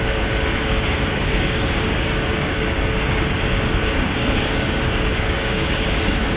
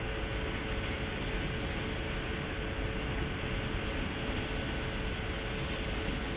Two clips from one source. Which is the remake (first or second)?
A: first